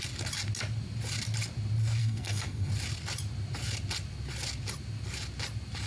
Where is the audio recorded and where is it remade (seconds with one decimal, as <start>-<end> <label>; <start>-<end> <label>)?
0.0-2.0 recorded; 2.0-2.7 remade; 2.7-5.9 recorded